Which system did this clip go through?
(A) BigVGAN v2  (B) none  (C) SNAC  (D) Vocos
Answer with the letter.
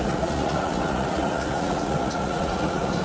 D